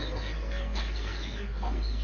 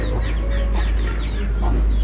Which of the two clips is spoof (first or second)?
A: first